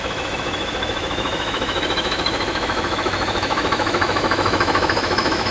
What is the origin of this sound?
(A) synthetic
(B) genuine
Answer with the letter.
A